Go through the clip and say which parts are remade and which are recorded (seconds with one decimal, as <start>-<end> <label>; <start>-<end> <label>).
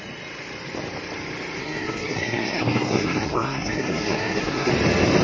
0.0-1.6 recorded; 1.6-4.7 remade; 4.7-5.2 recorded